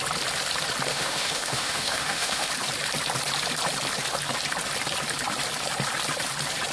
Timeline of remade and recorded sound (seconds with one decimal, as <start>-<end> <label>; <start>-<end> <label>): 0.0-0.9 recorded; 0.9-2.5 remade; 2.5-6.7 recorded

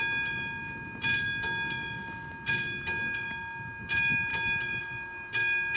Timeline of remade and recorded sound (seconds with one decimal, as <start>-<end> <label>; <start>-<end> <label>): 0.0-5.8 recorded

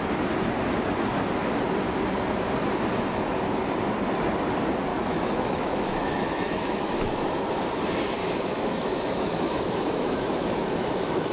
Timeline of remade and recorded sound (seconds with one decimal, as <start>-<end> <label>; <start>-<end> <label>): 0.0-4.9 recorded; 4.9-7.1 remade; 7.1-8.2 recorded; 8.2-11.3 remade

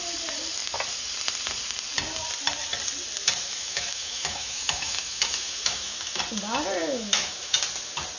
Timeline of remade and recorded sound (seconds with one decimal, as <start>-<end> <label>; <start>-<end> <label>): 0.0-3.5 recorded; 3.5-6.2 remade; 6.2-6.8 recorded; 6.8-7.6 remade; 7.6-8.2 recorded